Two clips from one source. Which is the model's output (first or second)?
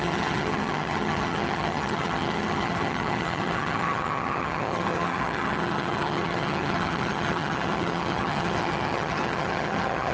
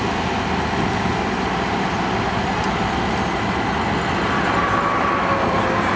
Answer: first